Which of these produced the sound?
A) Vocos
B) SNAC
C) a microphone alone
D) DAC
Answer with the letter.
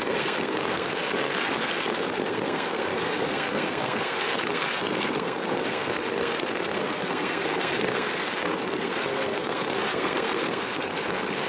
B